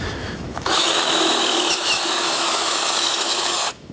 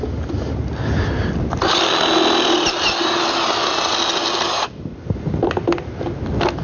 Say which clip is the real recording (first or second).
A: second